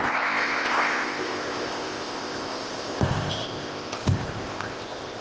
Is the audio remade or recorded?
remade